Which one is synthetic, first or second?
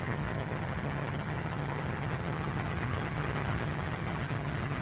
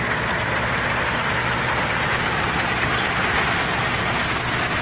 first